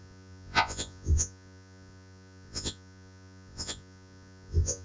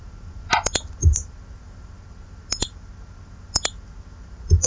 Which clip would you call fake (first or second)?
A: first